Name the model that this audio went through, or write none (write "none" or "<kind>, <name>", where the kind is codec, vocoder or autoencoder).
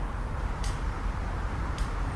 vocoder, BigVGAN v2